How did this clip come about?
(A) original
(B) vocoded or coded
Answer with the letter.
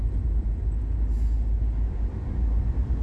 A